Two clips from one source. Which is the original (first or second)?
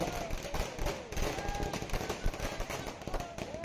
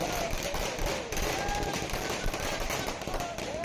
first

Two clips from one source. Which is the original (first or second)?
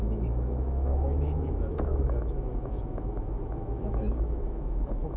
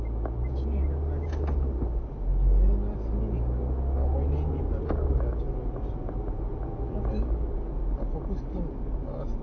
second